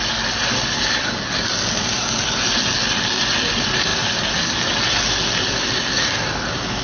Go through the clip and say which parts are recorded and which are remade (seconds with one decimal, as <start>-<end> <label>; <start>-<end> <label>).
0.0-6.8 recorded